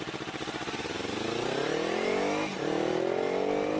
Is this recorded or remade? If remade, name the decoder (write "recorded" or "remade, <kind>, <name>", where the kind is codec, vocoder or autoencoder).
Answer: recorded